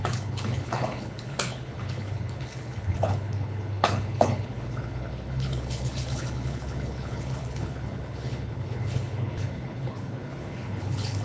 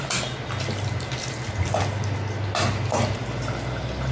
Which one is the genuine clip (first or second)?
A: second